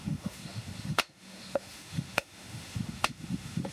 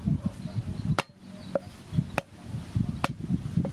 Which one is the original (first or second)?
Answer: second